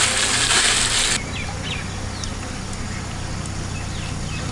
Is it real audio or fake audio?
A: real